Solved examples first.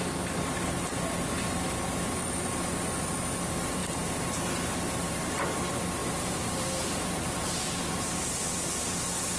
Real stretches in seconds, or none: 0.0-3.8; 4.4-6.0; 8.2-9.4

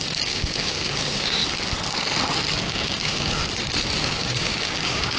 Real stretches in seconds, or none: 1.4-2.6; 3.4-4.0

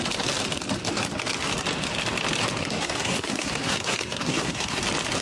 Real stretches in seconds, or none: 0.0-2.6; 4.8-5.2